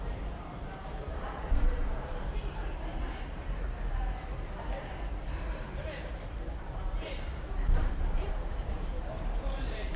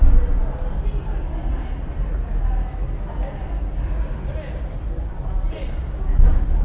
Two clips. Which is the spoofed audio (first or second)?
first